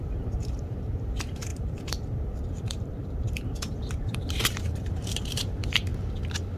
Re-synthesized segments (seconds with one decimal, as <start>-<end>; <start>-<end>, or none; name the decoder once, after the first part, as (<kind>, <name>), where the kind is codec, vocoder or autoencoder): 0.0-5.9 (vocoder, BigVGAN v2)